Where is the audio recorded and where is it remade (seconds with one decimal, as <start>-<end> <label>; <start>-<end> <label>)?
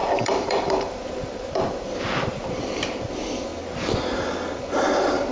0.0-3.5 remade; 3.5-4.6 recorded; 4.6-5.3 remade